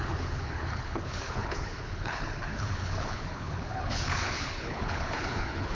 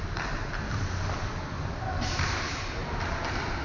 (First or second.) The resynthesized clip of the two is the first